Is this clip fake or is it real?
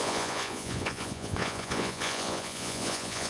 fake